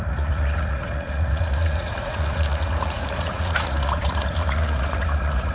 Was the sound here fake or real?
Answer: fake